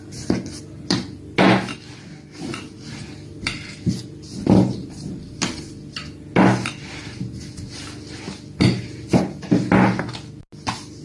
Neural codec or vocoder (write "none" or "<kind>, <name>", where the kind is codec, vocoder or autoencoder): none